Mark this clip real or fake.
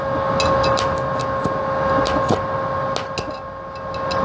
real